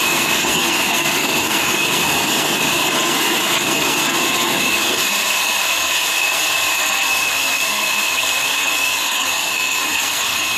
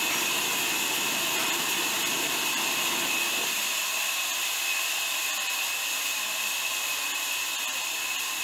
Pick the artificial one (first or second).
first